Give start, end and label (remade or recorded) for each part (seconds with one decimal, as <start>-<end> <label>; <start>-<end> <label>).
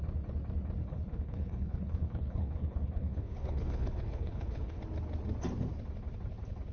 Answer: 0.0-0.8 recorded; 0.8-4.8 remade; 4.8-6.7 recorded